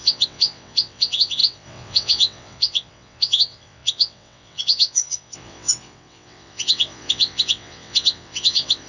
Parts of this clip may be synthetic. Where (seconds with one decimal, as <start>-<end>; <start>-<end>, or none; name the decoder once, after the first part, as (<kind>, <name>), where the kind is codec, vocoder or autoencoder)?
0.0-8.9 (vocoder, WaveNeXt)